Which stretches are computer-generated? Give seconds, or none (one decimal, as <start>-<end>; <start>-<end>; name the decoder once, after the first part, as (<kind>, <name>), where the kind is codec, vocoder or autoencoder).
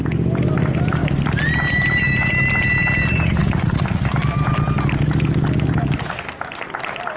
3.4-4.0 (vocoder, Vocos)